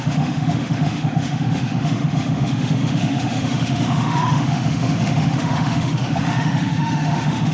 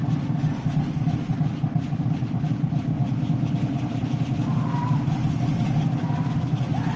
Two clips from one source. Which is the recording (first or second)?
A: second